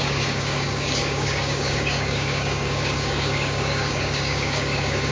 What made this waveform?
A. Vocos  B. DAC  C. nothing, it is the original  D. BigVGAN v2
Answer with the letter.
B